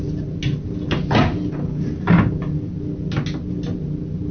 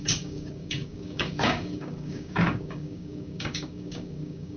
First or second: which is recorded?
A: first